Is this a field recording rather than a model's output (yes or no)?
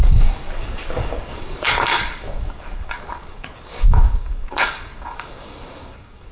no